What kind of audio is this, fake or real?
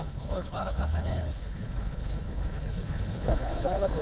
fake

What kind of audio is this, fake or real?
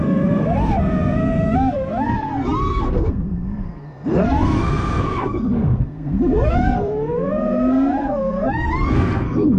fake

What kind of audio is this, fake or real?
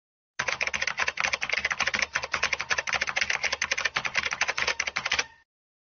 real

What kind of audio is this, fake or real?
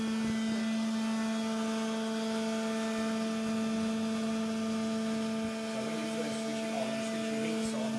real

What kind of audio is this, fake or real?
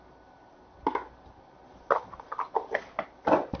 real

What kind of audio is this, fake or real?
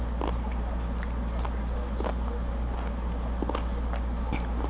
real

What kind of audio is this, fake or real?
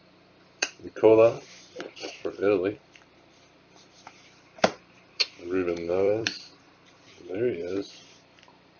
fake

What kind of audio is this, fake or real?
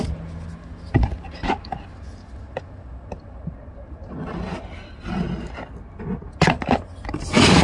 real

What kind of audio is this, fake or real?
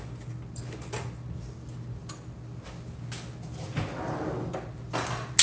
real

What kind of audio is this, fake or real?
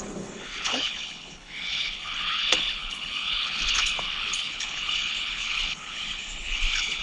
fake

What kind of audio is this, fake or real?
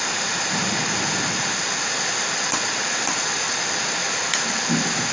real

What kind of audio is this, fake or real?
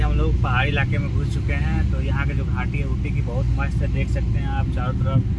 real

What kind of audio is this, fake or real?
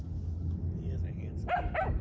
real